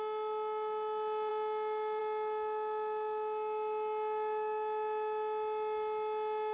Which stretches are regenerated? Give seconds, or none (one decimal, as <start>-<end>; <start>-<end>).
none